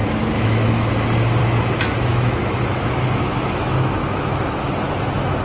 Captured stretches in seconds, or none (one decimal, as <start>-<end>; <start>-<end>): 0.9-1.4; 4.6-5.4